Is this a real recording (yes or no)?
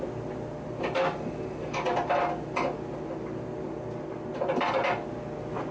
yes